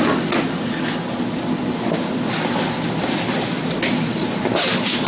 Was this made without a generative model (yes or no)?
yes